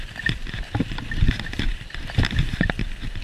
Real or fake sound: fake